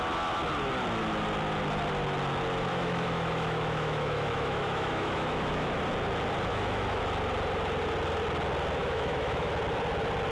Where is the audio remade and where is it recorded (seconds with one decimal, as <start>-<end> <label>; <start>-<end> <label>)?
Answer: 0.0-2.7 recorded; 2.7-5.8 remade; 5.8-6.5 recorded; 6.5-7.0 remade; 7.0-8.8 recorded; 8.8-9.5 remade; 9.5-10.3 recorded